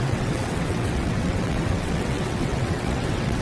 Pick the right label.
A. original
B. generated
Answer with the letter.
B